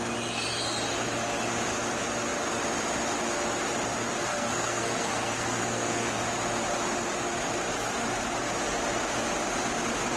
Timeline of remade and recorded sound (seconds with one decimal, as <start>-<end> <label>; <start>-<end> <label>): 0.0-4.3 recorded; 4.3-6.2 remade; 6.2-10.2 recorded